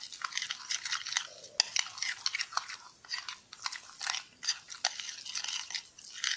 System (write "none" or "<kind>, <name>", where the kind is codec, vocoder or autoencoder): none